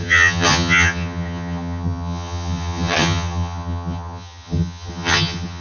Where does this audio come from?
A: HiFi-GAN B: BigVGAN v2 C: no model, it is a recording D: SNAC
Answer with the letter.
A